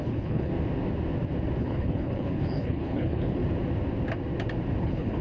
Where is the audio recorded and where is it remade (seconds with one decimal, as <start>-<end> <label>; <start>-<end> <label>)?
0.0-0.5 remade; 0.5-1.6 recorded; 1.6-3.4 remade; 3.4-4.8 recorded; 4.8-5.2 remade